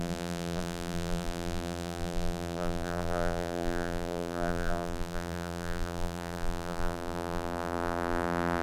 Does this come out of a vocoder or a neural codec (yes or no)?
yes